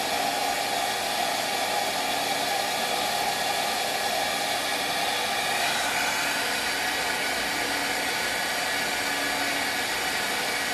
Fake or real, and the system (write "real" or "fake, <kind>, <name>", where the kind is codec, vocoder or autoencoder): real